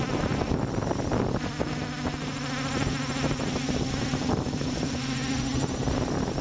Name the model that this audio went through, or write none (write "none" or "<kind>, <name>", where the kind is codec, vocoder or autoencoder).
none